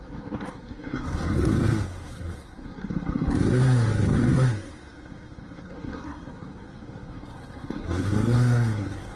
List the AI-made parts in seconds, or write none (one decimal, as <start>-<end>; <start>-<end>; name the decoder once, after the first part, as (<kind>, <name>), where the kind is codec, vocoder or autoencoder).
0.0-9.2 (codec, SNAC)

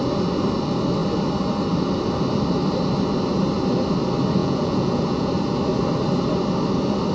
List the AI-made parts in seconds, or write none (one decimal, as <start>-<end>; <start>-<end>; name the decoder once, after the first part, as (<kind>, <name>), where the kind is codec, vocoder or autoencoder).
4.4-5.3 (vocoder, Vocos)

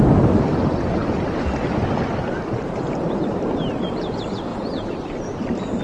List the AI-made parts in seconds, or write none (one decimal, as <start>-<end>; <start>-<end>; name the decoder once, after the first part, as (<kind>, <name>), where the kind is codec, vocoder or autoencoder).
none

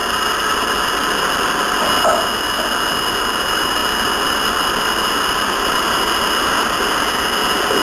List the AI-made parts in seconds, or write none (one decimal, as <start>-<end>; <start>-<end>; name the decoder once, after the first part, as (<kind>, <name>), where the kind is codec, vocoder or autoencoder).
none